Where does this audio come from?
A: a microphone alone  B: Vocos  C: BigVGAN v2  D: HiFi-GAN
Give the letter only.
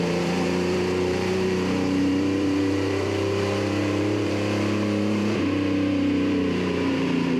C